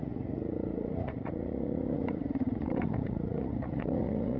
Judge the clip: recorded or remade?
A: remade